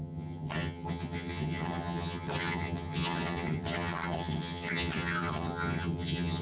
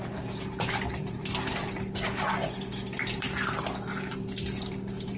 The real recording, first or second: second